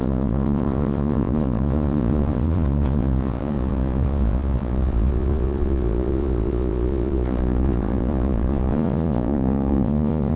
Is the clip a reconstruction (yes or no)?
yes